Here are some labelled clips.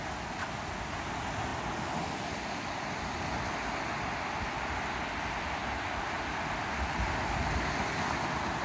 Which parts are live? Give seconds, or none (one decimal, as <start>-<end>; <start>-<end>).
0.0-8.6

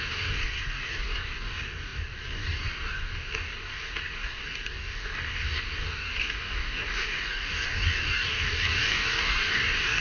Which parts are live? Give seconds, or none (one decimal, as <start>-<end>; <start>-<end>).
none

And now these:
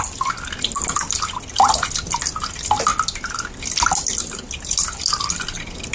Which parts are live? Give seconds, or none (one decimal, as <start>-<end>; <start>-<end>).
0.0-5.9

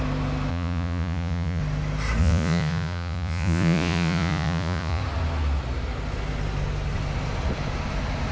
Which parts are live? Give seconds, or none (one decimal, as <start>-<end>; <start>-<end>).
0.0-0.5; 1.6-2.2; 5.0-8.3

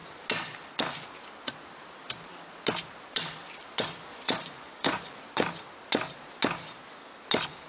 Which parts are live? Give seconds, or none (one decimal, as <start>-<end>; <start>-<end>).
0.0-4.1; 5.3-7.7

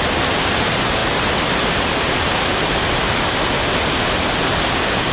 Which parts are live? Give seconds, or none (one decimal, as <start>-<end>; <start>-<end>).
0.0-5.1

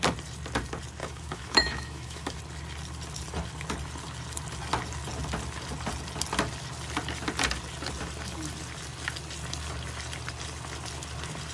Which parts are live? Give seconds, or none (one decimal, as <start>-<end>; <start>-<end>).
0.0-1.0; 2.4-11.5

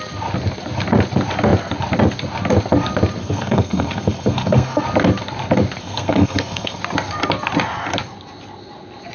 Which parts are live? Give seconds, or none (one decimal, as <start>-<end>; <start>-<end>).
0.0-3.2; 4.8-5.8; 6.8-9.1